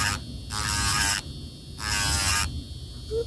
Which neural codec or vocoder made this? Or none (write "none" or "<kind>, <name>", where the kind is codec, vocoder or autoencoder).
none